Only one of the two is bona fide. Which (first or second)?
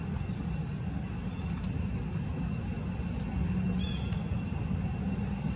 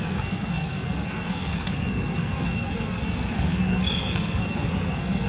first